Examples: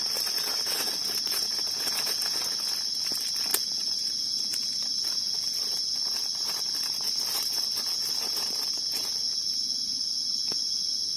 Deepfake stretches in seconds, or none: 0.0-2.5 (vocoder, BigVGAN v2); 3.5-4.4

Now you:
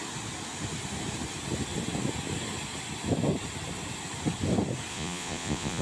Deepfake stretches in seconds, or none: 4.9-5.8 (vocoder, Vocos)

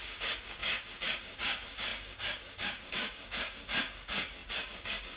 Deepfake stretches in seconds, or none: 0.0-5.2 (codec, DAC)

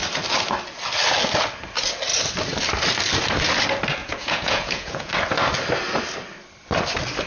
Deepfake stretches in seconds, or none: 4.0-5.1 (vocoder, Vocos)

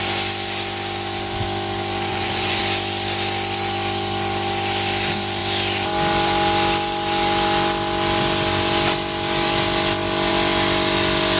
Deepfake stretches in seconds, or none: 2.1-2.6 (vocoder, Vocos)

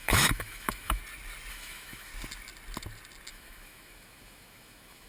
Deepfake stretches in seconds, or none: 0.0-1.0 (autoencoder, DAC-VAE); 1.5-2.1; 3.3-5.1